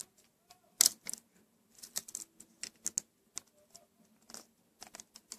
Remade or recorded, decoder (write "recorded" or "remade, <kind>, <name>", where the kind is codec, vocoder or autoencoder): recorded